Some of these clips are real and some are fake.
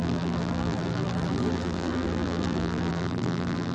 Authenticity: fake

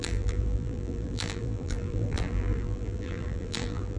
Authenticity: fake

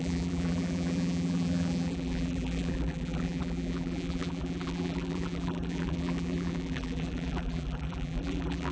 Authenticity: fake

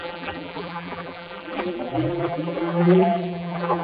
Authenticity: fake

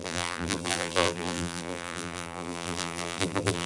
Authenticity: fake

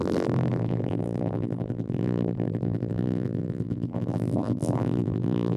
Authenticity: fake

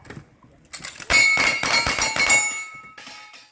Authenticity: real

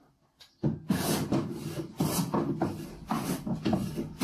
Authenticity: real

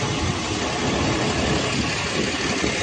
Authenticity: real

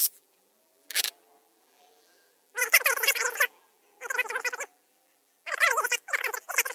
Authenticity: fake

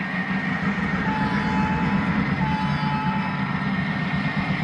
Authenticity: real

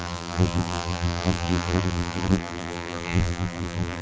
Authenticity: fake